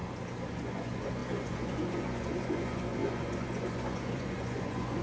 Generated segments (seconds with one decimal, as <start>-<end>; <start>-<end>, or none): 0.5-5.0